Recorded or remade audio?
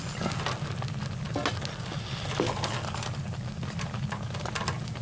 recorded